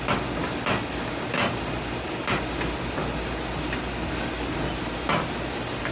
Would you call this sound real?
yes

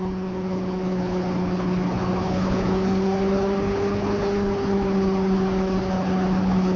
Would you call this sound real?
no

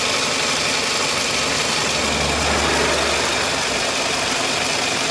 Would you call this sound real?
yes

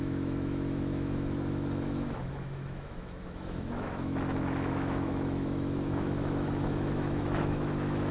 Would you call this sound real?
no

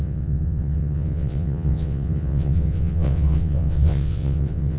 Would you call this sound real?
no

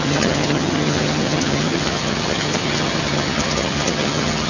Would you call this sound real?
no